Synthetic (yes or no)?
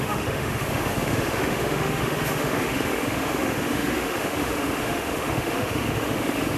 yes